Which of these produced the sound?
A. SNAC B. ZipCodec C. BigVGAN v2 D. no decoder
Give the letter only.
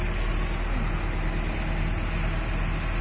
D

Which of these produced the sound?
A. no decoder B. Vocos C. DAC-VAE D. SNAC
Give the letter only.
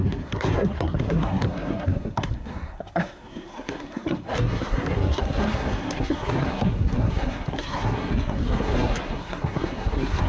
D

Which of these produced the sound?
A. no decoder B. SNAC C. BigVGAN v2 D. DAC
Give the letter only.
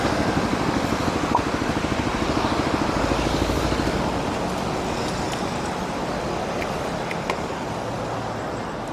A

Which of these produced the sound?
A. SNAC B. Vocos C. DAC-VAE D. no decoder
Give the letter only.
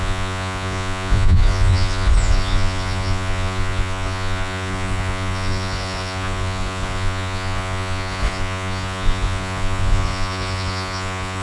B